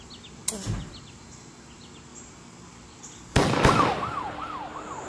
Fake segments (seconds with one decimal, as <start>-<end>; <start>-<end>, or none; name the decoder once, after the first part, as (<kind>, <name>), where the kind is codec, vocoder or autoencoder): none